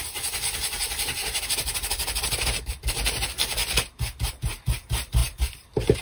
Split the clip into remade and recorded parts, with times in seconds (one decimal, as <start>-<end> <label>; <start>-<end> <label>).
0.0-3.6 remade; 3.6-4.3 recorded; 4.3-6.0 remade